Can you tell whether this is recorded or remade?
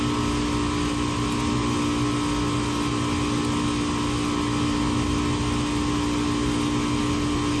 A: recorded